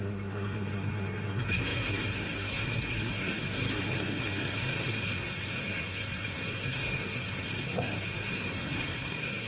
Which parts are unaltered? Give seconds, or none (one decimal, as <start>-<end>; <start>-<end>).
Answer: none